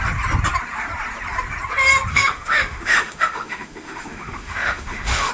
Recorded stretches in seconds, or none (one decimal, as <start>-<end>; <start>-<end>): 0.0-2.1